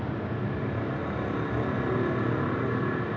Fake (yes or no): no